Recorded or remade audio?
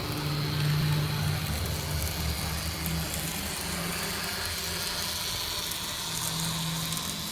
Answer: recorded